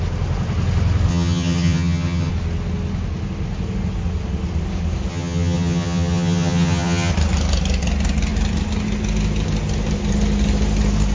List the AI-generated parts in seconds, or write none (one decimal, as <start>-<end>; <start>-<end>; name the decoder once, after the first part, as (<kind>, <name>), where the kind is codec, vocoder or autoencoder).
1.1-2.3 (vocoder, HiFi-GAN); 5.1-7.1